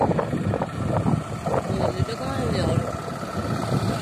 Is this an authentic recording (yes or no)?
yes